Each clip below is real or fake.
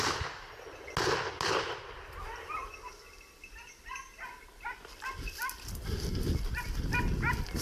real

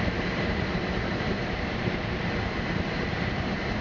fake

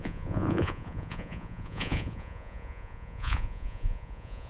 fake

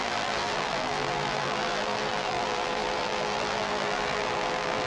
fake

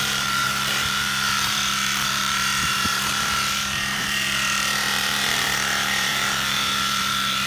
fake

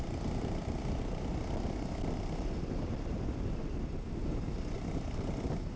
real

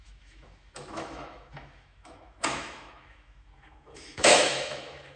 fake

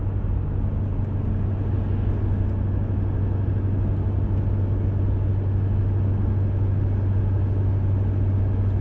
real